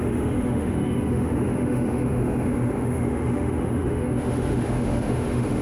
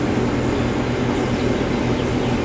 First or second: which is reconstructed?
first